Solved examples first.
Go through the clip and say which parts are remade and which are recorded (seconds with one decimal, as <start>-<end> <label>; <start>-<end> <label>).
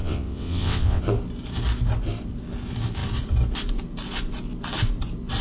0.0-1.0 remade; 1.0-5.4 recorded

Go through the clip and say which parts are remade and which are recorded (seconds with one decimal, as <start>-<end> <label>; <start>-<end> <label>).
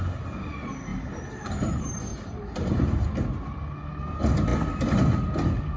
0.0-0.9 recorded; 0.9-1.5 remade; 1.5-2.1 recorded; 2.1-3.1 remade; 3.1-5.8 recorded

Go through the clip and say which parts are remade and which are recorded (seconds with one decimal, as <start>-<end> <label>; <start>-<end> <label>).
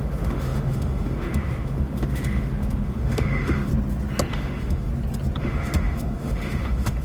0.0-3.7 remade; 3.7-4.3 recorded; 4.3-4.9 remade; 4.9-5.4 recorded; 5.4-7.0 remade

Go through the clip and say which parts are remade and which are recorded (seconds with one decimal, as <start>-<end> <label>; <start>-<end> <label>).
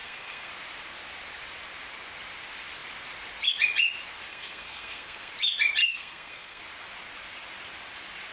0.0-0.5 remade; 0.5-4.3 recorded; 4.3-5.3 remade; 5.3-5.8 recorded; 5.8-6.6 remade; 6.6-8.3 recorded